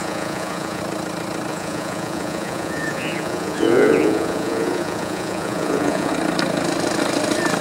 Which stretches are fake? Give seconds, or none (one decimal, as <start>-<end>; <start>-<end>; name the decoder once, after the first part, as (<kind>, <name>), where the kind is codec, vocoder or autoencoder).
0.0-0.8 (vocoder, Vocos); 1.5-6.1